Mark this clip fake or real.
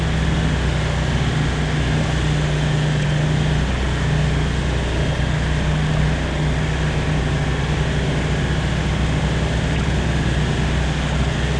real